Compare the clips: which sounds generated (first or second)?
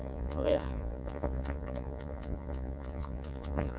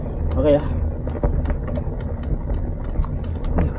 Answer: first